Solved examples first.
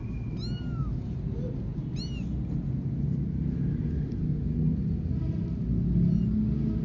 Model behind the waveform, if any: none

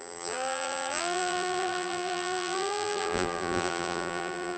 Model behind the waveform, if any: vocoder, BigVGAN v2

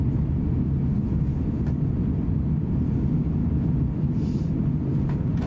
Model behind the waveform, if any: none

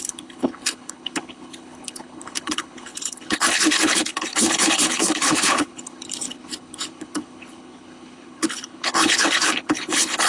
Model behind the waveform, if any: codec, HILCodec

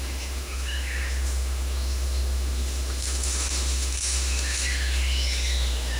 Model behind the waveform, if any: autoencoder, DAC-VAE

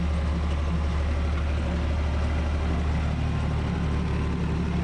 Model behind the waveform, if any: none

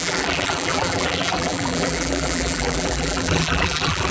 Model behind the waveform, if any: vocoder, BigVGAN v2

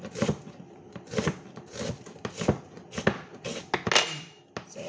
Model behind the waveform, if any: none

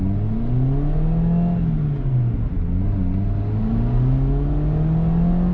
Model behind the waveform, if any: none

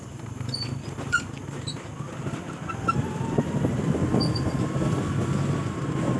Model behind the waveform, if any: none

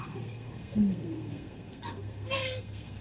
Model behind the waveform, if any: codec, SNAC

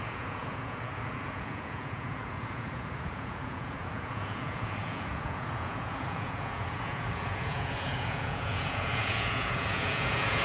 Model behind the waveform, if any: vocoder, Vocos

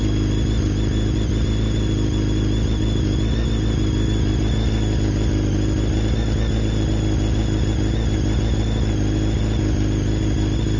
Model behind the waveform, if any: none